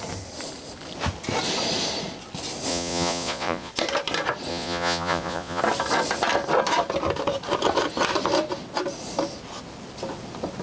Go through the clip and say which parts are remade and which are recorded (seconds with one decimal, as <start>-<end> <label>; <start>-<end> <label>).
0.0-2.7 recorded; 2.7-3.7 remade; 3.7-4.5 recorded; 4.5-5.6 remade; 5.6-10.6 recorded